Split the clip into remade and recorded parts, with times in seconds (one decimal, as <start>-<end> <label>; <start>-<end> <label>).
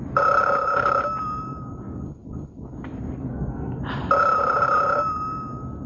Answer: 0.0-3.3 recorded; 3.3-3.8 remade; 3.8-5.9 recorded